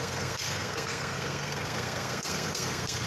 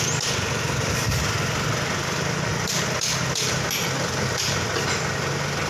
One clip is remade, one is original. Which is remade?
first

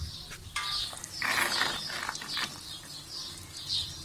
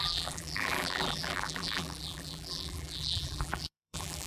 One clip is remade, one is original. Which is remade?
second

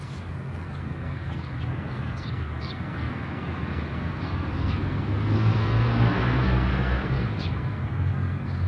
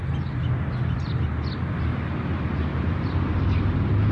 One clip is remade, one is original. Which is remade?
first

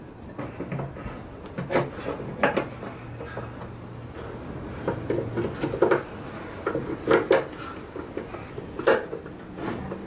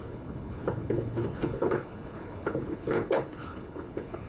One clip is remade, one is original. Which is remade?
second